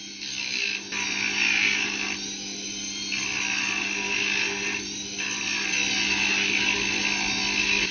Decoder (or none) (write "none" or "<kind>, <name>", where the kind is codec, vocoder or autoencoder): none